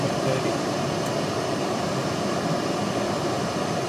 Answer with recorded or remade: remade